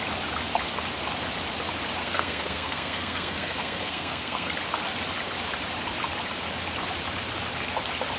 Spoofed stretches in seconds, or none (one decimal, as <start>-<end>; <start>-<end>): 2.0-4.5